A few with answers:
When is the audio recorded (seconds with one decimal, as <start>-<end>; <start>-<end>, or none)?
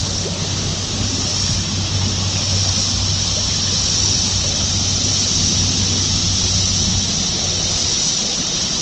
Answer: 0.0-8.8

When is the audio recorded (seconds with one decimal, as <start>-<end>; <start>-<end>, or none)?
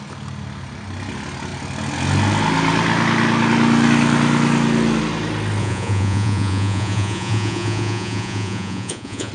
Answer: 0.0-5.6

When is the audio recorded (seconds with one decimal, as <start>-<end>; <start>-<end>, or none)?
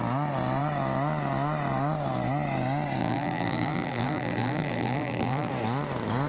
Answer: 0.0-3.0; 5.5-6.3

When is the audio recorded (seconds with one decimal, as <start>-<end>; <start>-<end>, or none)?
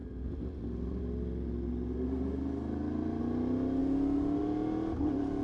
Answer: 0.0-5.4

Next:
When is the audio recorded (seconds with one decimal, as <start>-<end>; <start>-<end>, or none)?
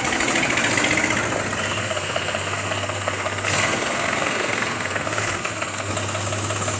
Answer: 0.0-1.8; 5.9-6.8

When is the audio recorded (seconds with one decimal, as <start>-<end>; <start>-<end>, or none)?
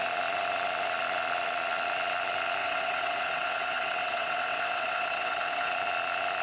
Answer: 0.0-2.6; 5.7-6.4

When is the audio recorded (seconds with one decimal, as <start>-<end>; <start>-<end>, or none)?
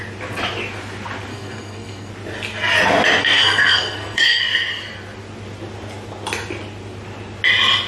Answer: 0.0-1.3; 2.1-3.2; 4.4-7.9